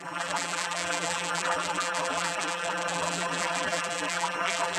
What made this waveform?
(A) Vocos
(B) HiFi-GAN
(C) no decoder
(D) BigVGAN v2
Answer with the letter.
D